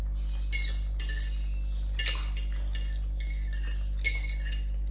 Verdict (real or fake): real